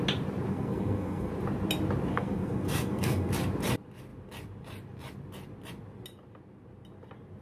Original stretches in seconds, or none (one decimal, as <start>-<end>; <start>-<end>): 0.0-0.5; 1.3-2.1; 3.3-7.4